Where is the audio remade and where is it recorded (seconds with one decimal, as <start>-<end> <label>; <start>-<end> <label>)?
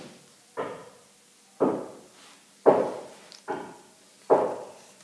0.0-5.0 recorded